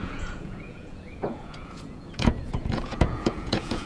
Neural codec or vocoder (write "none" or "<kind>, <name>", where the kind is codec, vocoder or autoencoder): vocoder, Vocos